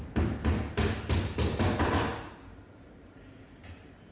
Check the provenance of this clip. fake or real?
real